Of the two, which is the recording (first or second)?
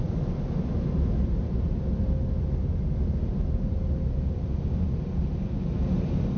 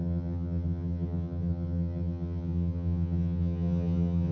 first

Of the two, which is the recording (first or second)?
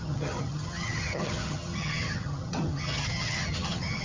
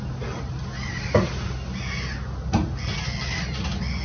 second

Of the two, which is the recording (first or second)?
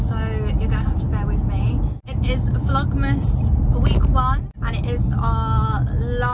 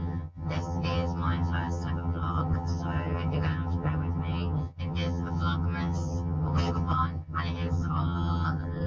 first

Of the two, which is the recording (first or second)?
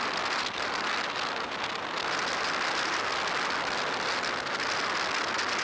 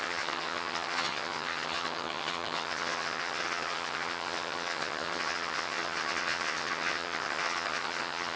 first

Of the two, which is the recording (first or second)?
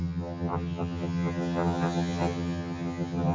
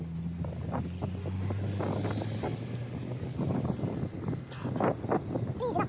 second